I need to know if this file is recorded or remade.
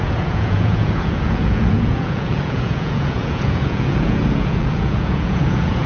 remade